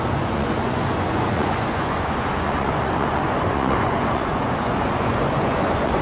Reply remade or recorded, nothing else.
remade